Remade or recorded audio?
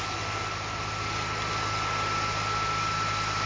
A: recorded